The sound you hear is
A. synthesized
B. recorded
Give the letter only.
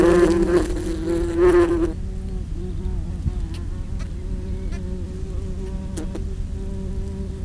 B